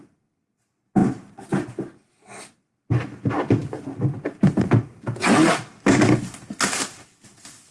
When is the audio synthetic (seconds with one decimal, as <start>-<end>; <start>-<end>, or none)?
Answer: none